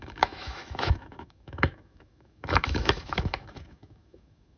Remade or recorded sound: remade